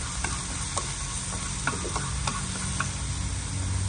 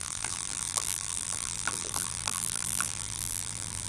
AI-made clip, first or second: second